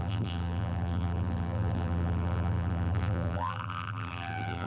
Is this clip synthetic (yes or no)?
yes